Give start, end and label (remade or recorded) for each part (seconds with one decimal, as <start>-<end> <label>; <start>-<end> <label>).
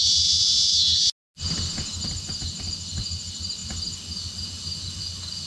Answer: 0.0-5.5 recorded